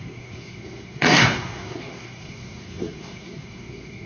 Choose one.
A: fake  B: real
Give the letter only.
A